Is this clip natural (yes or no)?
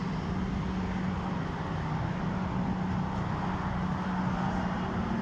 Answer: yes